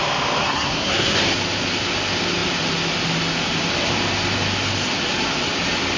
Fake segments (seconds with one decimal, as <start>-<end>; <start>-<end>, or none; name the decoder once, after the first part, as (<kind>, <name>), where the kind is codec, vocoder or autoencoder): 0.4-1.2 (codec, SNAC)